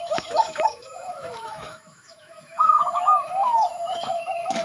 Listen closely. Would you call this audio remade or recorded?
remade